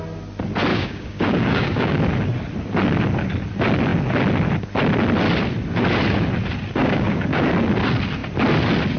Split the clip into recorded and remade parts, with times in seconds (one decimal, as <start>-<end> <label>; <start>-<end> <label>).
0.0-0.7 recorded; 0.7-2.0 remade; 2.0-6.8 recorded; 6.8-7.5 remade; 7.5-9.0 recorded